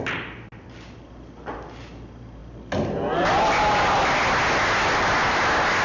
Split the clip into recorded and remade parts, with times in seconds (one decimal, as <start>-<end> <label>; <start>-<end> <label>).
0.0-5.8 recorded